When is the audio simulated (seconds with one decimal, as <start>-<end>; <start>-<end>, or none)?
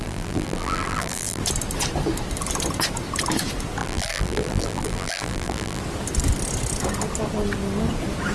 0.0-1.4; 3.8-5.8